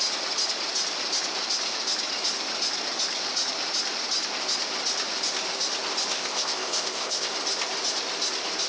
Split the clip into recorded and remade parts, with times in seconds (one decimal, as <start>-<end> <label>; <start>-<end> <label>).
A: 0.0-6.1 recorded; 6.1-7.3 remade; 7.3-8.7 recorded